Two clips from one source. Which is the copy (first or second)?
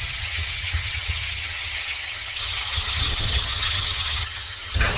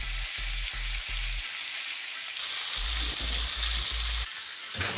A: first